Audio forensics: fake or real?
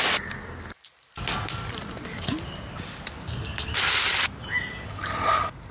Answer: real